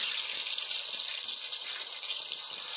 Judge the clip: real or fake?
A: real